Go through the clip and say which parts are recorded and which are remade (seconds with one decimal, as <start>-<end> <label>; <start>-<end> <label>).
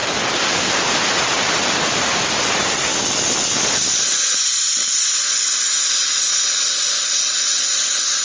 0.0-8.2 recorded